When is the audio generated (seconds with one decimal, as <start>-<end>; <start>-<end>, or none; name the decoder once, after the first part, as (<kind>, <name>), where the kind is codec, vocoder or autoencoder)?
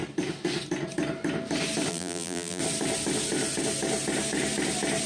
1.9-2.6 (vocoder, BigVGAN v2)